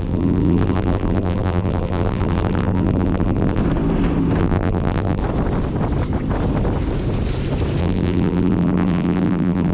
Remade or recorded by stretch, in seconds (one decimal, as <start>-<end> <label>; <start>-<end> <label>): 0.0-3.6 remade; 3.6-4.4 recorded; 4.4-5.2 remade; 5.2-7.8 recorded; 7.8-9.7 remade